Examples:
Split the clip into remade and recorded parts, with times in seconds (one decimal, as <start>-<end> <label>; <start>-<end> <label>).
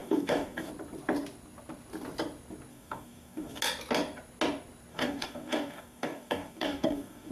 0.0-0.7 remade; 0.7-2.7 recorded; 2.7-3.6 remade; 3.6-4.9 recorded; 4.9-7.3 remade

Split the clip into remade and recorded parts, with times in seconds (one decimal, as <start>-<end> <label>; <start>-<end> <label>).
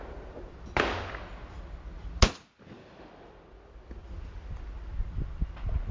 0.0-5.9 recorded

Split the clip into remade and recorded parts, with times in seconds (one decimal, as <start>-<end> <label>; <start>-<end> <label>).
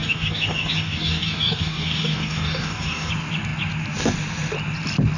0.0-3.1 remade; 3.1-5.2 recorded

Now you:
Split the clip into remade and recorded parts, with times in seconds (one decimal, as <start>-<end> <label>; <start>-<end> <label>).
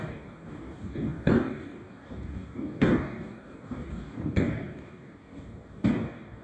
0.0-6.4 remade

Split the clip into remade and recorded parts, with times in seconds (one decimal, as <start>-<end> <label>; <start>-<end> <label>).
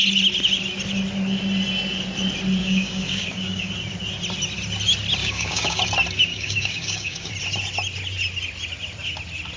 0.0-2.6 recorded; 2.6-3.7 remade; 3.7-5.2 recorded; 5.2-5.8 remade; 5.8-6.3 recorded; 6.3-7.3 remade; 7.3-9.6 recorded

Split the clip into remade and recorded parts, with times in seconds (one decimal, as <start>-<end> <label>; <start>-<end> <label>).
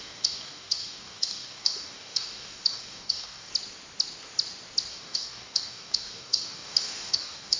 0.0-3.5 remade; 3.5-4.9 recorded; 4.9-7.6 remade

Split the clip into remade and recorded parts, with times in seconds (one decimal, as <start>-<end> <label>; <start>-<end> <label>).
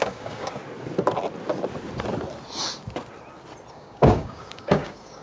0.0-0.6 remade; 0.6-3.7 recorded; 3.7-5.2 remade